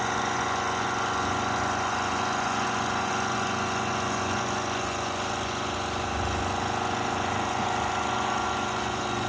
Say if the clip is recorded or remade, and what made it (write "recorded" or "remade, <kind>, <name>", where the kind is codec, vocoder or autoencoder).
remade, vocoder, Vocos